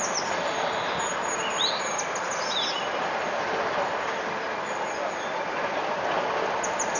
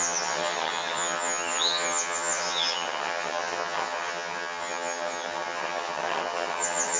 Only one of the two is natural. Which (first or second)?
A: first